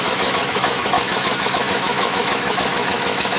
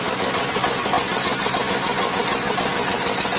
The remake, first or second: first